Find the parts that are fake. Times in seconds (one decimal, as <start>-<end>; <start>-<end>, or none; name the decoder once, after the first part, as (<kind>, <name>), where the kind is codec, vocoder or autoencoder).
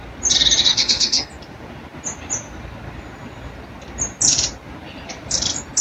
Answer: 0.7-1.3 (codec, SNAC)